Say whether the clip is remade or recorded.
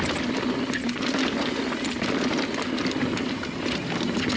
recorded